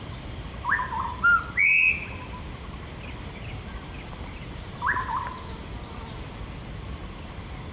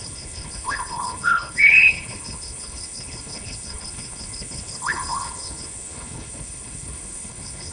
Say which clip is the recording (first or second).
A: first